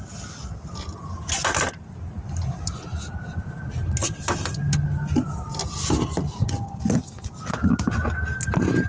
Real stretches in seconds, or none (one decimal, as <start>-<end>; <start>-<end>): 0.0-8.9